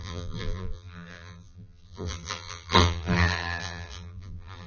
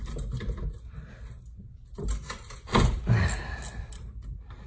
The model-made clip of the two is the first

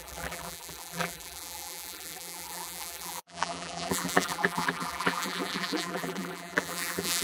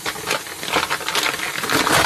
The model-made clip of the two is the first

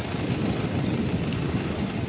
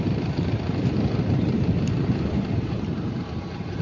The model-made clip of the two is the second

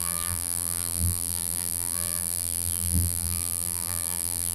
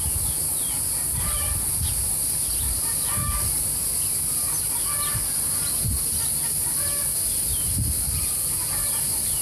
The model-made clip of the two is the first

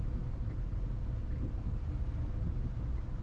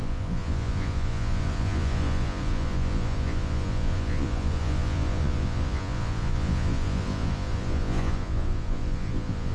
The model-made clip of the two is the second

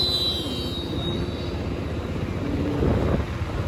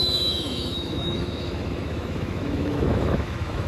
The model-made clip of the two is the second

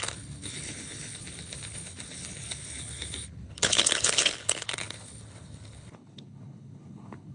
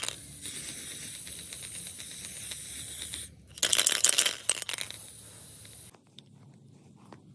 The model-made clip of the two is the first